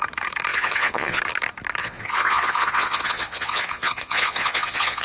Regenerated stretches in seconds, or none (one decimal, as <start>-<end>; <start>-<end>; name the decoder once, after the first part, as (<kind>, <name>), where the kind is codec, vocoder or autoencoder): 0.5-1.2 (vocoder, Vocos); 1.8-5.0